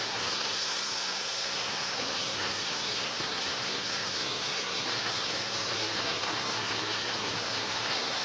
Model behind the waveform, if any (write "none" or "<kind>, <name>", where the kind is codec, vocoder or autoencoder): codec, SNAC